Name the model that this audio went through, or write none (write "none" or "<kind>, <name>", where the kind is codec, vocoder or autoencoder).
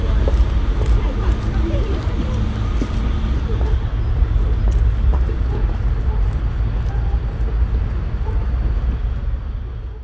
none